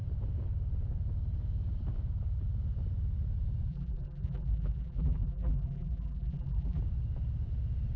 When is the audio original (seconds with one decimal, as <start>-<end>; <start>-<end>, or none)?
0.0-3.7; 6.8-8.0